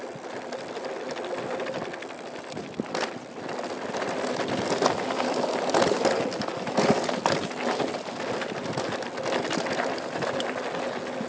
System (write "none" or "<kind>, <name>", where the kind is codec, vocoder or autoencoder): none